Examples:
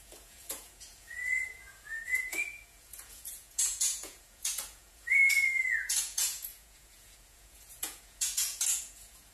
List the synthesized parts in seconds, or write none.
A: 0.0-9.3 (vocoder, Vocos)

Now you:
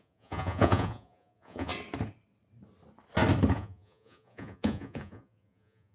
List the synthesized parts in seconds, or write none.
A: 0.0-1.7 (vocoder, Vocos); 3.5-5.9